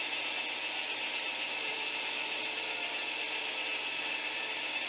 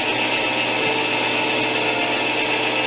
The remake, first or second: first